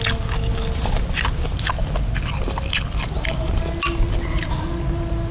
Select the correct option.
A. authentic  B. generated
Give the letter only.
A